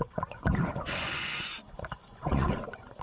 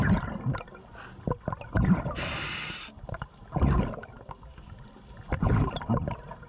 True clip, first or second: second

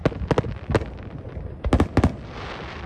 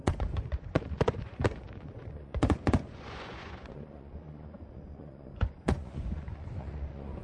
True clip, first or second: first